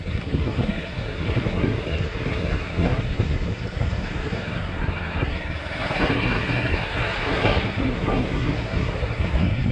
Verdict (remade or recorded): remade